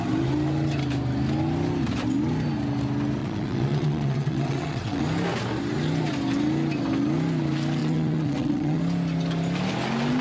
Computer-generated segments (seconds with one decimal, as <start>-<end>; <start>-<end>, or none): 3.2-5.0; 7.8-8.8